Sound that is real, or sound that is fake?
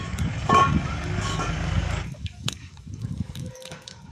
fake